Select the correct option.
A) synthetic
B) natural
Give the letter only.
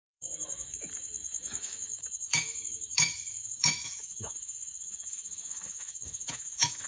A